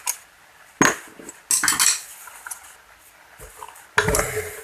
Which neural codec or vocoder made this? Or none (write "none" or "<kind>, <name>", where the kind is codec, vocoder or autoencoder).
none